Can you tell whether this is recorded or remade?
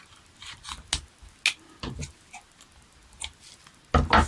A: recorded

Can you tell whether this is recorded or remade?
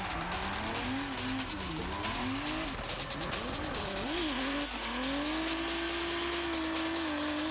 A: recorded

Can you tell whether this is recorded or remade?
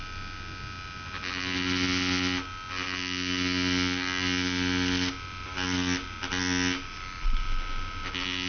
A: recorded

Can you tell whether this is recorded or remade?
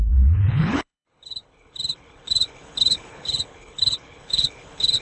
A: remade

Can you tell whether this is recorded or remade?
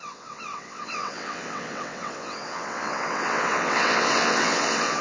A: remade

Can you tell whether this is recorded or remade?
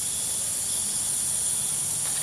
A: recorded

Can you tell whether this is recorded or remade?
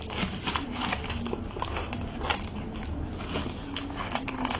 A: recorded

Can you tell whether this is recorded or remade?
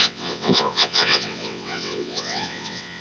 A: remade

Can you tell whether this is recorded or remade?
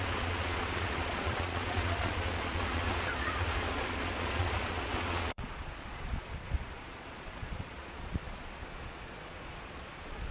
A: remade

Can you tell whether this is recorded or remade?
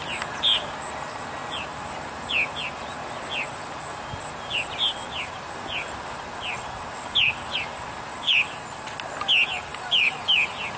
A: recorded